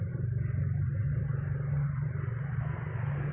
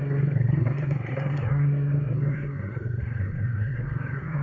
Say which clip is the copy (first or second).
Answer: second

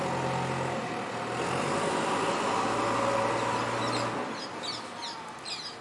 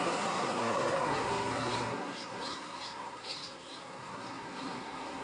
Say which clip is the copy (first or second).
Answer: second